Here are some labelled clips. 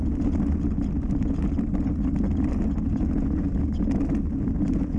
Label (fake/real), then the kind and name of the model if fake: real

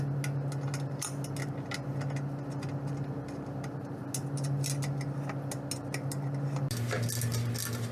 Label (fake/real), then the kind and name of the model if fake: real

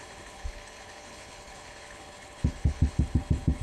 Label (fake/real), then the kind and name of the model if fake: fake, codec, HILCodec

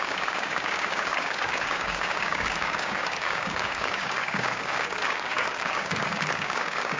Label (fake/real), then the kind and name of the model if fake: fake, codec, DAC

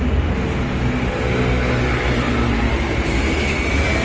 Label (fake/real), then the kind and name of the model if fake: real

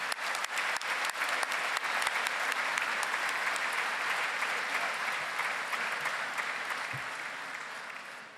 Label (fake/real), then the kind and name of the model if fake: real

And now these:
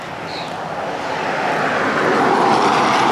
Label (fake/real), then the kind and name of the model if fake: real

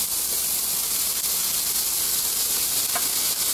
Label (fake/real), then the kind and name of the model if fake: real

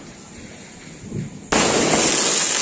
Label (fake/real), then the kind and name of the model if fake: real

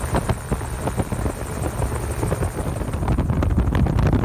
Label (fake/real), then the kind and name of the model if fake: real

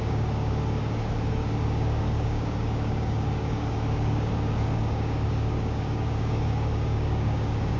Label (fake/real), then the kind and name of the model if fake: fake, codec, DAC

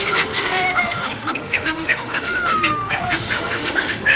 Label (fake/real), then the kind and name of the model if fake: fake, autoencoder, DAC-VAE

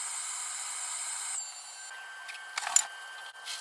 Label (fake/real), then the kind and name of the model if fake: real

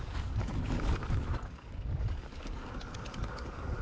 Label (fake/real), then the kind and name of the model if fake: fake, codec, DAC